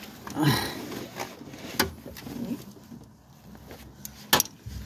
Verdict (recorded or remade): recorded